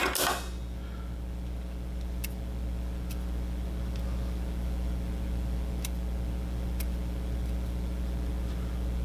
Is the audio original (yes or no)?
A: yes